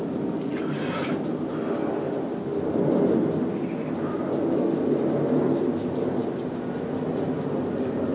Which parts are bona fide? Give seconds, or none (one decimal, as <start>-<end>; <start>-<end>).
0.0-8.1